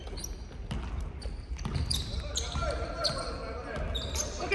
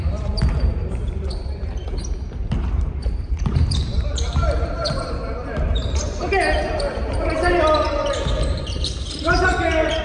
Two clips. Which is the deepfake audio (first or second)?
second